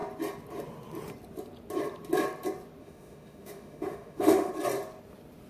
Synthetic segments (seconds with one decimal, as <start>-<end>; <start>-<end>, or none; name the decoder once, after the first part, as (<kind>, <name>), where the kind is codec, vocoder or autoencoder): 2.8-4.5 (autoencoder, DAC-VAE)